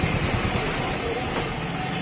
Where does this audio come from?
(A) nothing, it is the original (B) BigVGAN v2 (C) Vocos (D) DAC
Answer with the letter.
A